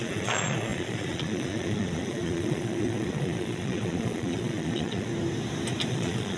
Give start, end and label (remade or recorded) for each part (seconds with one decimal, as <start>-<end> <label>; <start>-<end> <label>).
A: 0.0-5.1 remade; 5.1-5.9 recorded; 5.9-6.4 remade